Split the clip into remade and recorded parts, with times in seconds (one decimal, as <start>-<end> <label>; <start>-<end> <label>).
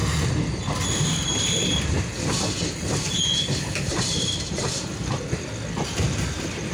0.0-2.9 recorded; 2.9-4.9 remade; 4.9-5.9 recorded; 5.9-6.7 remade